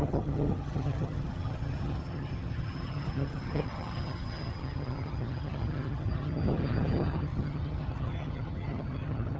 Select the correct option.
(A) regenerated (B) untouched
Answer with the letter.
A